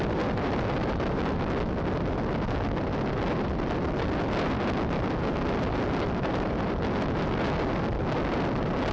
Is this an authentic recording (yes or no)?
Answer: yes